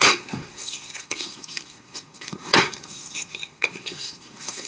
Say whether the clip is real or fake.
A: fake